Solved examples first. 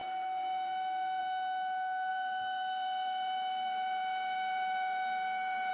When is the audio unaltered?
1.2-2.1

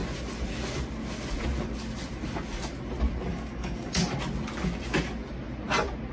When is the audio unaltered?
0.0-3.3; 3.9-6.1

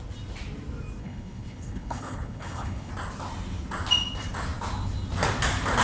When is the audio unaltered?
0.0-1.0; 2.9-5.8

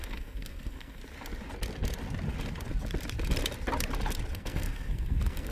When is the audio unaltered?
1.0-4.3

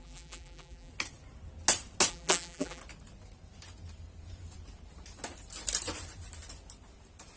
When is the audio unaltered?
0.9-2.1; 2.8-7.4

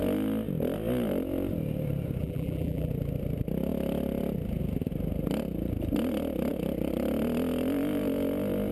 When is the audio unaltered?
0.0-2.2; 2.9-8.7

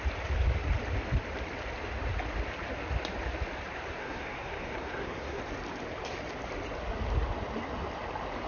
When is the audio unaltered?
0.0-4.0; 5.4-8.5

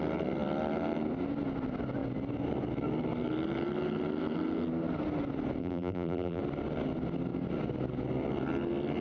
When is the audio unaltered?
0.0-5.6; 6.4-9.0